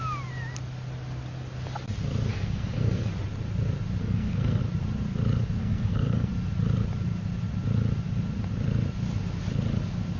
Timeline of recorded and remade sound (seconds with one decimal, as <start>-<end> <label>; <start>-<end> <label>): 0.0-2.3 recorded; 2.3-3.1 remade; 3.1-4.0 recorded; 4.0-4.6 remade; 4.6-5.6 recorded; 5.6-6.3 remade; 6.3-10.2 recorded